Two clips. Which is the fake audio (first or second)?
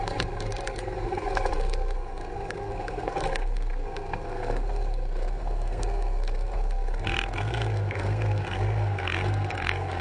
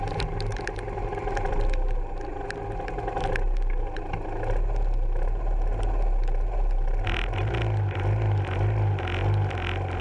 first